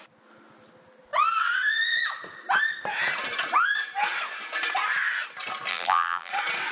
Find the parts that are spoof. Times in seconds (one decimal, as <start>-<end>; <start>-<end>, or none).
5.7-6.3